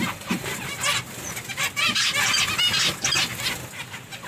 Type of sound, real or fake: real